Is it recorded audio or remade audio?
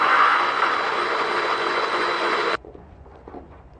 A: remade